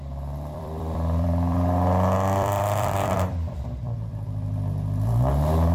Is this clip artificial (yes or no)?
yes